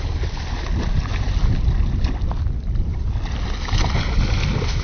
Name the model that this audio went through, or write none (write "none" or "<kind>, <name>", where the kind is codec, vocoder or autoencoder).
none